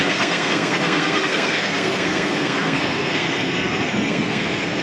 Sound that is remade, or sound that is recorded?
remade